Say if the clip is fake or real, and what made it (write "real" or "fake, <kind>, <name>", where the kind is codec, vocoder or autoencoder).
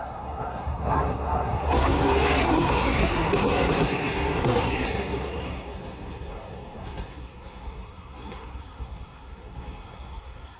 fake, codec, SNAC